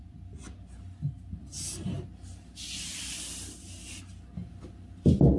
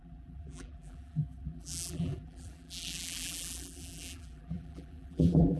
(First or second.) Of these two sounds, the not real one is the second